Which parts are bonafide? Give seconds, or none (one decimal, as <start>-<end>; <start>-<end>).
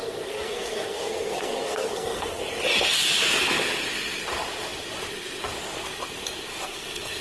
2.4-6.5